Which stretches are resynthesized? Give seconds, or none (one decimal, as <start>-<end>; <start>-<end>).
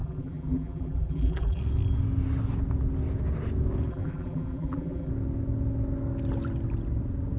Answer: 0.0-1.6; 3.9-5.1